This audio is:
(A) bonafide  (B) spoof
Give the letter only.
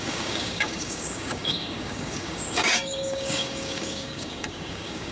B